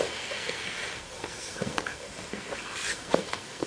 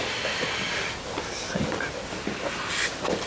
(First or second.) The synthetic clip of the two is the first